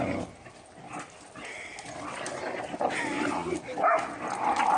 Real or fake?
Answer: real